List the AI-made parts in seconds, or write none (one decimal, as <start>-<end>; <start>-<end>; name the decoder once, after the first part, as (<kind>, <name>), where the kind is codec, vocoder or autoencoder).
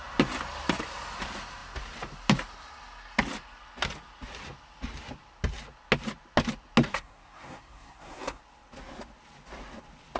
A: 6.9-8.4 (codec, SNAC)